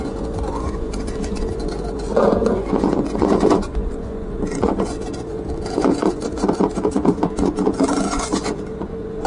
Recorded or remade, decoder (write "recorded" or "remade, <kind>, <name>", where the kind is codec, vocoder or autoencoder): remade, vocoder, Vocos